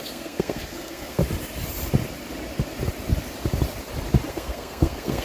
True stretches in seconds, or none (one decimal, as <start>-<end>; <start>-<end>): 1.2-4.3